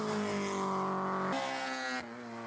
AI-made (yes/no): no